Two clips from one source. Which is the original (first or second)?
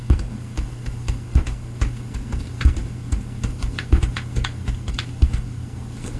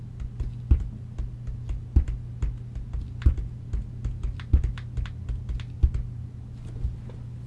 second